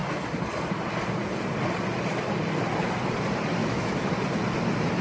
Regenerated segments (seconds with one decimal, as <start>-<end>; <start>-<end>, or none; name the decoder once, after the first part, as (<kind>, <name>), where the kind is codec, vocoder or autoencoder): 3.6-4.1 (autoencoder, DAC-VAE)